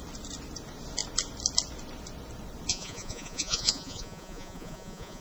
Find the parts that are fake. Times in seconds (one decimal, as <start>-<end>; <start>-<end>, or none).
2.7-5.2